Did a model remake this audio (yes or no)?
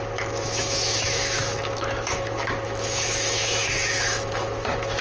yes